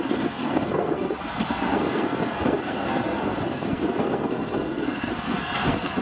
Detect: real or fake fake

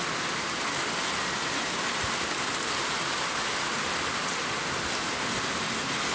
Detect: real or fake real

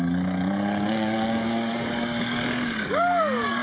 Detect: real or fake fake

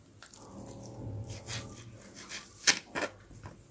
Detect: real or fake real